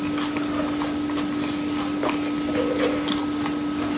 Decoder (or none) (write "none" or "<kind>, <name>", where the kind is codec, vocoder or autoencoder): none